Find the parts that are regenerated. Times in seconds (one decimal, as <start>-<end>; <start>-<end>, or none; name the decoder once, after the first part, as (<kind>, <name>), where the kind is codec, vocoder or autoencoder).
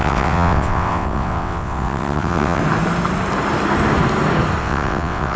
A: 0.0-2.6 (vocoder, WaveNeXt); 4.6-5.4